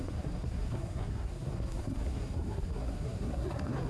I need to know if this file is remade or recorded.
remade